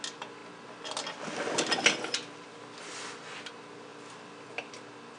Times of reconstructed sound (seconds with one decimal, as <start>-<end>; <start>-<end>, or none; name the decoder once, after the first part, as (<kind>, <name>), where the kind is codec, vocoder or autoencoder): none